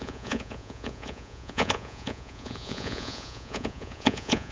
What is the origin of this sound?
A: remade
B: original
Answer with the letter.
A